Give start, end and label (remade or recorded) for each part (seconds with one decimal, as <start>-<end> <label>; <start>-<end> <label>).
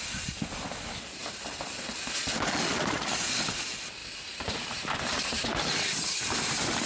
0.0-4.0 recorded; 4.0-6.9 remade